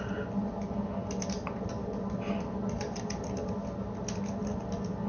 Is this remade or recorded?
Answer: recorded